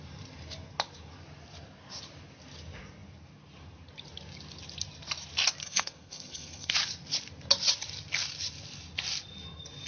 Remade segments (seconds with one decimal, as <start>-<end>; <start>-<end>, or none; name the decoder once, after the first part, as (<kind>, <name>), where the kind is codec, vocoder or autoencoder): 5.6-6.7 (codec, SNAC)